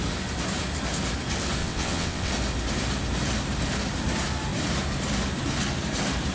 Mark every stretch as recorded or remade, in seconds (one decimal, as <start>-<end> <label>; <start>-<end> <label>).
0.0-1.6 recorded; 1.6-2.3 remade; 2.3-6.3 recorded